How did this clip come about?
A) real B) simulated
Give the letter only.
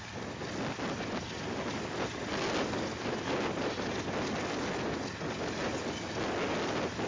A